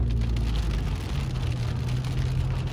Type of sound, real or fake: real